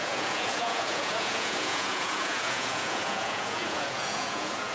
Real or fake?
fake